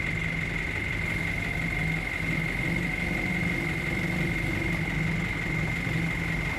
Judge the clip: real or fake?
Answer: real